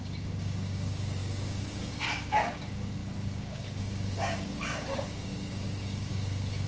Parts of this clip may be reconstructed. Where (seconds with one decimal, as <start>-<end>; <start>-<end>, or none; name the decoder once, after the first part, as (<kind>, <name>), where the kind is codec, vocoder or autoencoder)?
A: 0.0-6.7 (codec, DAC)